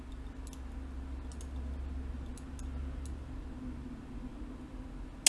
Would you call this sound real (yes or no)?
yes